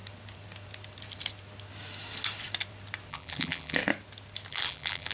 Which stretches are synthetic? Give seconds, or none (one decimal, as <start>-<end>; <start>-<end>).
3.1-3.8; 4.5-5.1